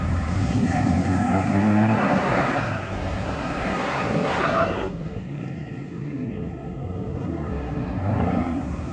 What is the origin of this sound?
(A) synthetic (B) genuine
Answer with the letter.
A